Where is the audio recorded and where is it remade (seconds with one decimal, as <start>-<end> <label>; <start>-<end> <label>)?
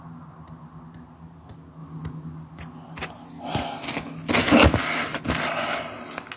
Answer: 0.0-6.4 recorded